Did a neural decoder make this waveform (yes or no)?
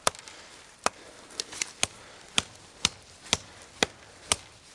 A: yes